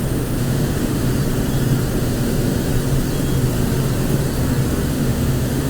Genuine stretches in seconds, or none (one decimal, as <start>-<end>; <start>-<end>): 1.1-2.0; 2.7-4.9